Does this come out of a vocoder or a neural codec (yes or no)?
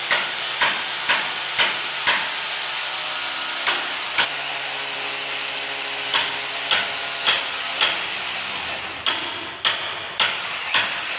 no